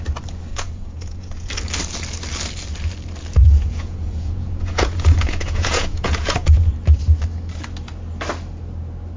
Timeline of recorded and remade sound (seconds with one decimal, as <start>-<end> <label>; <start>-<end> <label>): 0.0-0.5 recorded; 0.5-1.5 remade; 1.5-3.4 recorded; 3.4-6.7 remade; 6.7-9.2 recorded